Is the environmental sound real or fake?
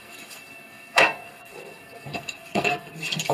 fake